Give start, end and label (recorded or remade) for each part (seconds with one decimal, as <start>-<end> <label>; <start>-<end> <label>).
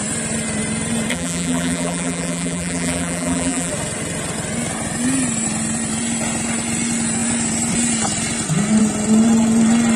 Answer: 0.0-1.1 recorded; 1.1-3.7 remade; 3.7-10.0 recorded